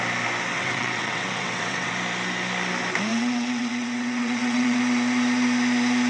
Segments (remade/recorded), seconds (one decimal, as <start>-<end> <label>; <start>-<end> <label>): 0.0-0.5 recorded; 0.5-1.9 remade; 1.9-3.1 recorded; 3.1-4.8 remade; 4.8-6.1 recorded